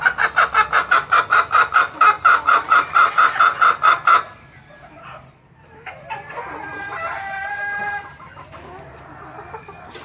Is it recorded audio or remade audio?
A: recorded